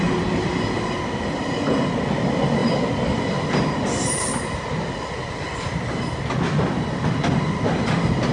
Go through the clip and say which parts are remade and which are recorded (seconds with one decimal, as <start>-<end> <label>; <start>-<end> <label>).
0.0-8.3 recorded